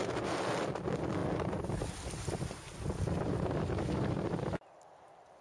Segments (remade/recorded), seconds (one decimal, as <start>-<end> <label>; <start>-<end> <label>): 0.0-5.4 recorded

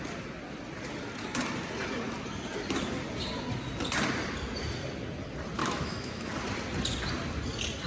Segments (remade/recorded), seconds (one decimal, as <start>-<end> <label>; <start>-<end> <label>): 0.0-5.6 recorded; 5.6-6.3 remade; 6.3-7.9 recorded

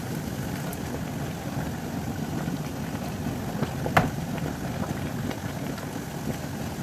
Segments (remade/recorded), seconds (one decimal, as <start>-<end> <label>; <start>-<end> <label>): 0.0-6.8 recorded

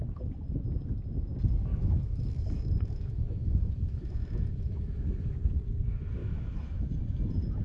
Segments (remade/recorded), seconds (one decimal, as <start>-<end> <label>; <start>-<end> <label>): 0.0-1.7 recorded; 1.7-5.5 remade; 5.5-6.2 recorded; 6.2-6.9 remade; 6.9-7.6 recorded

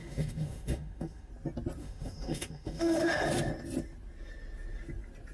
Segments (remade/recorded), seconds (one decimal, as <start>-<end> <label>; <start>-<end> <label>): 0.0-1.3 remade; 1.3-1.8 recorded; 1.8-3.2 remade; 3.2-5.3 recorded

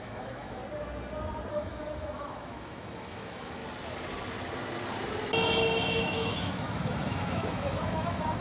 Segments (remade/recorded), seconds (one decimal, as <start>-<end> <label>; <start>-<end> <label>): 0.0-0.6 remade; 0.6-1.5 recorded; 1.5-3.6 remade; 3.6-6.0 recorded; 6.0-8.4 remade